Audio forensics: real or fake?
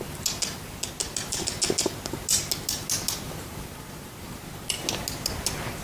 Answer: real